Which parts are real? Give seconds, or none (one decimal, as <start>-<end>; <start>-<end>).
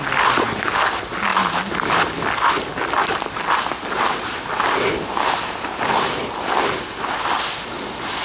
0.0-8.2